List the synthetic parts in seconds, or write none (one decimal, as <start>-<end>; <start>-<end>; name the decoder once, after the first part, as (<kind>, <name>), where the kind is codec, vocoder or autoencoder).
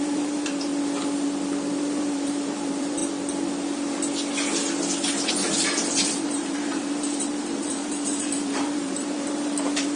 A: 0.0-0.7 (vocoder, BigVGAN v2); 1.7-3.0; 5.3-10.0